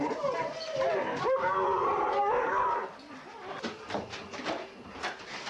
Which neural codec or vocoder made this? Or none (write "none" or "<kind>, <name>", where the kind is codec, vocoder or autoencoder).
none